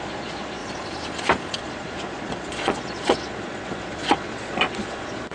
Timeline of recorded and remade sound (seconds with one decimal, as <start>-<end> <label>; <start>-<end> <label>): 0.0-0.6 remade; 0.6-1.6 recorded; 1.6-5.3 remade